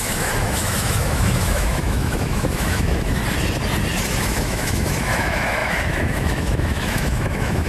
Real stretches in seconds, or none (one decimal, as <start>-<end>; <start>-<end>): 3.2-4.2